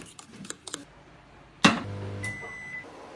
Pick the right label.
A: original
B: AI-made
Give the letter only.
A